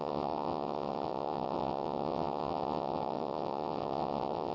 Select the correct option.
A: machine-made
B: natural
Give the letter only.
A